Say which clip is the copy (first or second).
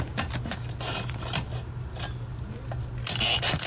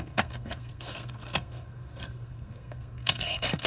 second